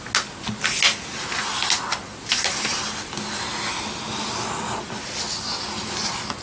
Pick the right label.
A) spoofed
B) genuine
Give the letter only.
B